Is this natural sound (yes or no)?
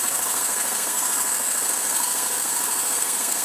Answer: no